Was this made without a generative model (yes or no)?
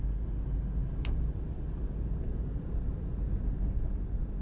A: yes